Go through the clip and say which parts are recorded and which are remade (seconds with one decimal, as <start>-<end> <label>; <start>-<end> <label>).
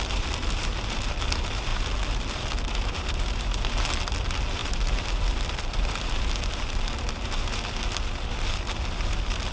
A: 0.0-9.5 recorded